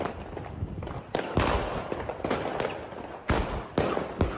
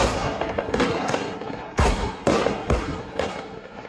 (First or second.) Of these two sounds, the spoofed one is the second